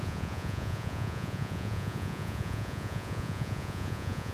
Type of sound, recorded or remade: remade